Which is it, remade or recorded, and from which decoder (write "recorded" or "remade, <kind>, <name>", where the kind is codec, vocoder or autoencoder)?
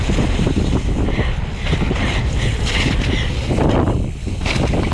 recorded